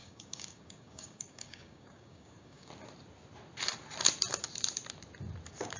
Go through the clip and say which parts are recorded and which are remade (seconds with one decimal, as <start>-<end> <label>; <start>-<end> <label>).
0.0-2.7 remade; 2.7-5.8 recorded

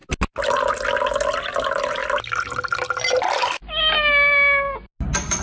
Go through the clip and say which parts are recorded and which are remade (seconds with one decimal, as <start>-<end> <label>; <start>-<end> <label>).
0.0-5.4 recorded

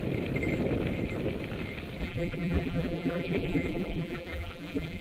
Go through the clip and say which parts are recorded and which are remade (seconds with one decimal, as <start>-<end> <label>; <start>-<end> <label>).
0.0-2.0 recorded; 2.0-5.0 remade

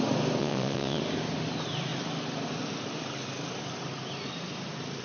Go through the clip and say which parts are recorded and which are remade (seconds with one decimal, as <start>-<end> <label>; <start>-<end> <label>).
0.0-0.4 recorded; 0.4-1.0 remade; 1.0-5.0 recorded